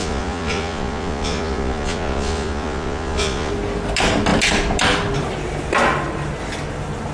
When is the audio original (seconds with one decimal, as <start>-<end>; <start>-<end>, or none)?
3.5-7.1